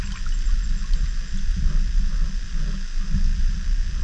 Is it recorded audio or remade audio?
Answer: recorded